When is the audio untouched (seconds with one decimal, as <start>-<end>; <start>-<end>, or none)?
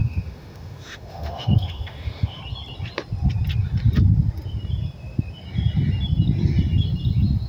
2.4-7.5